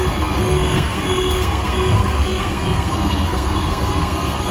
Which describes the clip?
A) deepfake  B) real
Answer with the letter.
A